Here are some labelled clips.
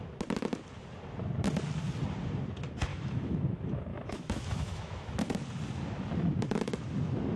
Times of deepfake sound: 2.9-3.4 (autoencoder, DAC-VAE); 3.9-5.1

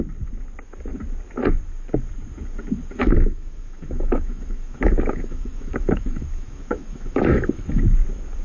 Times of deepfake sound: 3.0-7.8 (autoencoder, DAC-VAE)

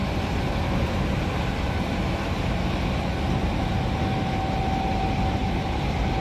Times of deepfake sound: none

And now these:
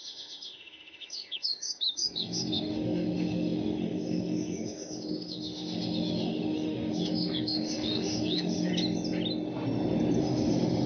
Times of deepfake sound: 0.0-8.7 (autoencoder, DAC-VAE); 10.2-10.9